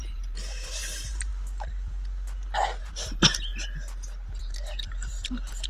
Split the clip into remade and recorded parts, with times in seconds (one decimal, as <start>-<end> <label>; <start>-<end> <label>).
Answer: 0.0-1.3 remade; 1.3-2.8 recorded; 2.8-3.5 remade; 3.5-4.4 recorded; 4.4-5.7 remade

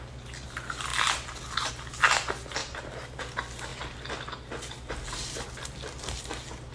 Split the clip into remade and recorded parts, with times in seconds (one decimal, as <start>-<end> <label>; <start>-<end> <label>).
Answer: 0.0-2.6 recorded; 2.6-3.2 remade; 3.2-6.7 recorded

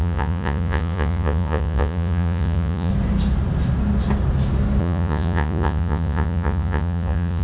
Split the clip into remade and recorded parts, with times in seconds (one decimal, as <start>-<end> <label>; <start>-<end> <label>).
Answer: 0.0-2.9 remade; 2.9-4.8 recorded; 4.8-7.4 remade